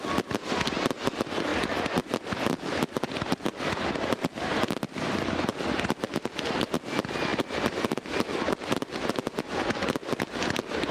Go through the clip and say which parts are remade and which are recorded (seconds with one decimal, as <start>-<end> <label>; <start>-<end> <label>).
0.0-10.0 recorded; 10.0-10.9 remade